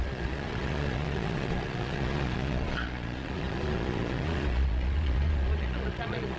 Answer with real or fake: fake